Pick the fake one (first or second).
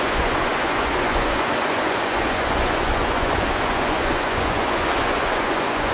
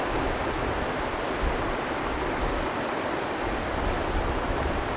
first